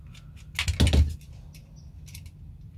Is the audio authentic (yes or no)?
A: yes